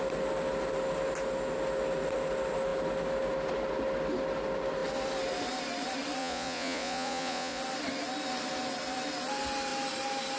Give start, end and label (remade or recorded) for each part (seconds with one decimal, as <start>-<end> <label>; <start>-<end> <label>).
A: 0.0-6.2 recorded; 6.2-7.6 remade; 7.6-10.4 recorded